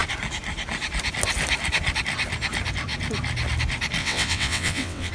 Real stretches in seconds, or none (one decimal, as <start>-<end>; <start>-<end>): 0.0-4.0